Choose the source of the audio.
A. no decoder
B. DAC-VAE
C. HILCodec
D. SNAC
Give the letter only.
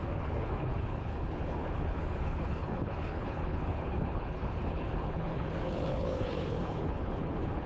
C